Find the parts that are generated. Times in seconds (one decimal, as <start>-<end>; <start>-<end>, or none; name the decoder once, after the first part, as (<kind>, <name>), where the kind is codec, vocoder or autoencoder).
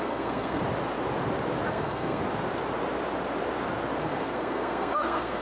0.0-0.6 (codec, SNAC); 1.7-2.2; 4.0-5.4